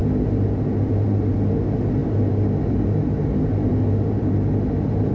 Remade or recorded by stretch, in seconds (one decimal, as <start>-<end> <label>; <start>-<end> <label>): 0.0-5.1 recorded